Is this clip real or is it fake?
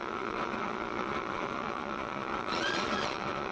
fake